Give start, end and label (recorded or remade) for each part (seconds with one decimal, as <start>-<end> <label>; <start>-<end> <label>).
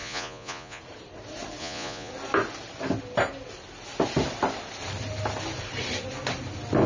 0.0-0.8 remade; 0.8-1.6 recorded; 1.6-2.1 remade; 2.1-6.9 recorded